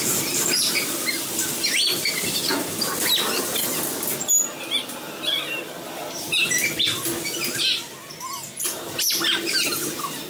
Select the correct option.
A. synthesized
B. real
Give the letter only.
B